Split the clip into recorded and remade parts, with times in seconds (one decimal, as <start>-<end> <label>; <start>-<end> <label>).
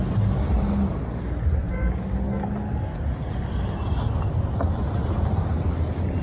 0.0-6.2 recorded